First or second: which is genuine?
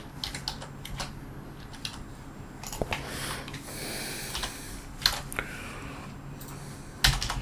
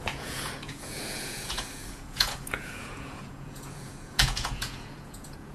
first